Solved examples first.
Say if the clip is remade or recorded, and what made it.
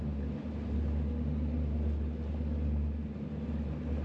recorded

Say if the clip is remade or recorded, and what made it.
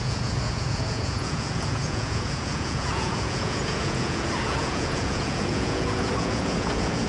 remade, vocoder, Vocos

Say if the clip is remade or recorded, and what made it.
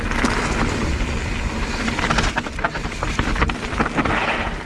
recorded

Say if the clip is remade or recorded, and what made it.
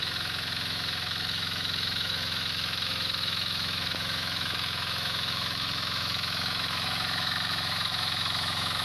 remade, autoencoder, DAC-VAE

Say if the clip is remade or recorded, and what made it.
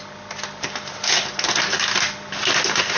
recorded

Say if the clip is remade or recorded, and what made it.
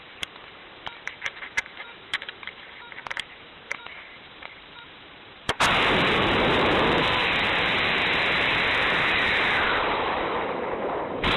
remade, vocoder, BigVGAN v2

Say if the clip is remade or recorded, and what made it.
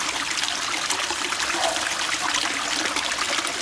recorded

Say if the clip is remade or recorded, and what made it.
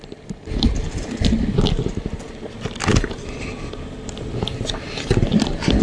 recorded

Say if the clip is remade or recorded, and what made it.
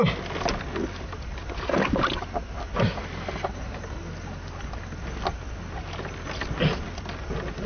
recorded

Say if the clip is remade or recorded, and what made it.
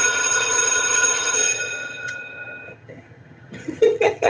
remade, vocoder, HiFi-GAN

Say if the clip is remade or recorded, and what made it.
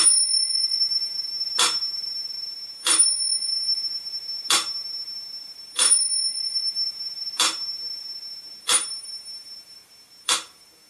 remade, vocoder, BigVGAN v2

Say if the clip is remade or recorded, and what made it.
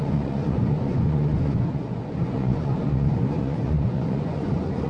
remade, vocoder, Vocos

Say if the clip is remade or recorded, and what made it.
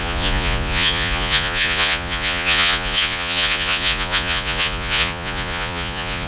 remade, vocoder, Vocos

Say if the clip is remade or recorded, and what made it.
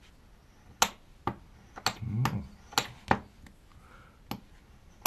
recorded